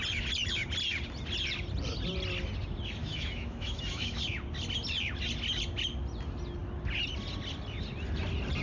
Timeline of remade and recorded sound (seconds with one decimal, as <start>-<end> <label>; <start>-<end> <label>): 0.0-3.0 recorded; 3.0-4.2 remade; 4.2-8.6 recorded